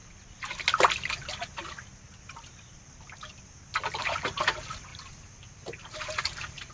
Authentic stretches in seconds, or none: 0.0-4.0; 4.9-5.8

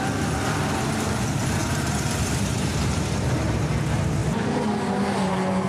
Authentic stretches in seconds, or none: 0.0-1.4; 3.7-4.2; 5.1-5.7

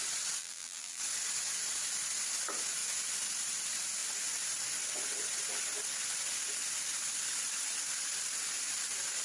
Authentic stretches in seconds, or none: 0.0-0.4; 1.0-9.2

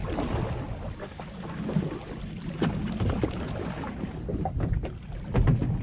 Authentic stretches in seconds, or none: 0.0-5.8